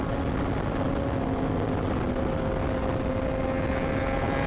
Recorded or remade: recorded